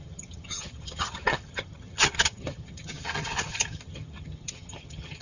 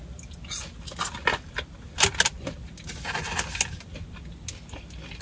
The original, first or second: second